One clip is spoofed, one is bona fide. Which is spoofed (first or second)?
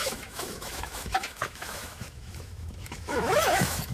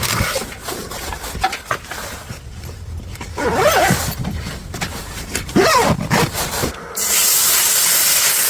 first